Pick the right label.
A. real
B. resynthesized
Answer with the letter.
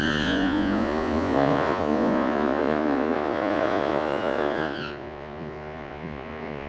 B